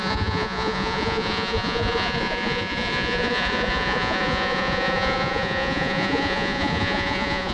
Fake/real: fake